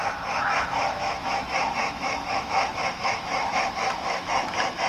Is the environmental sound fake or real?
fake